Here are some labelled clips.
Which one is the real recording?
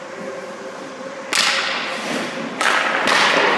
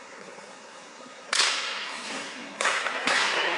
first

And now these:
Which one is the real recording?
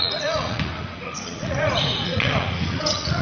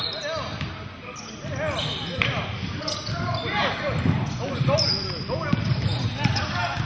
second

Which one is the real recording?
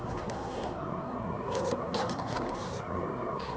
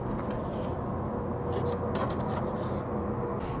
second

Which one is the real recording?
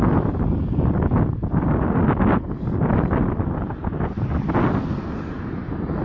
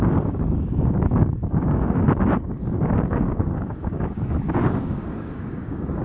first